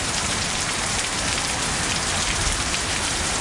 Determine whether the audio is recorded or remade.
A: remade